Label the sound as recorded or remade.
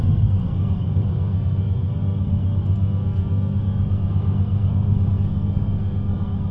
remade